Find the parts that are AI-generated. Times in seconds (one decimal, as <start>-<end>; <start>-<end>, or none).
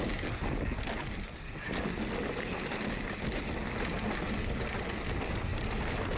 none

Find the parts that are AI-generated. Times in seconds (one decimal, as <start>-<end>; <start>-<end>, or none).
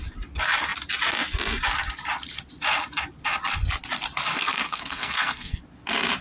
4.3-5.6